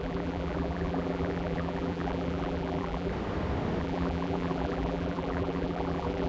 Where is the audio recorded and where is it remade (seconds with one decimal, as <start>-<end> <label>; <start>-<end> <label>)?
0.0-3.1 remade; 3.1-3.8 recorded; 3.8-6.3 remade